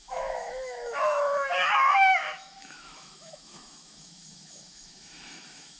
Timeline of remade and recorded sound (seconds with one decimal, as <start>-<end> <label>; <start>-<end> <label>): 0.0-5.8 remade